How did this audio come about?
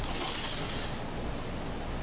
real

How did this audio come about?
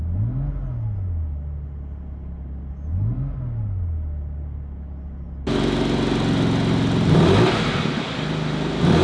real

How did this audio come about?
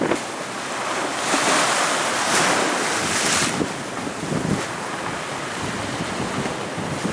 real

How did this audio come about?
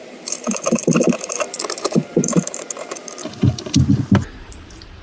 fake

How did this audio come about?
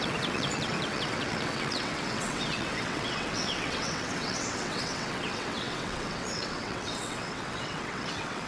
fake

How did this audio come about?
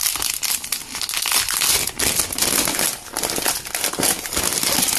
real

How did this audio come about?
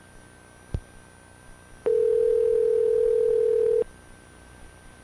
real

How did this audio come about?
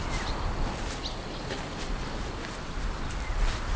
real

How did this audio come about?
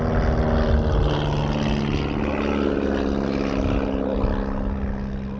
real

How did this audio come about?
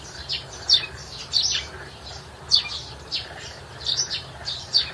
fake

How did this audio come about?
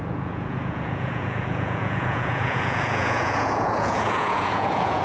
fake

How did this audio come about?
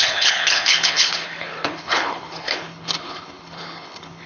fake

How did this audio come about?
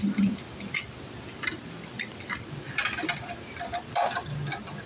real